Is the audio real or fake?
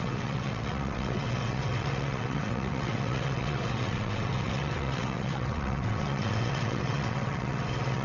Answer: fake